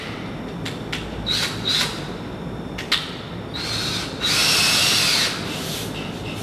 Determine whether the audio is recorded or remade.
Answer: recorded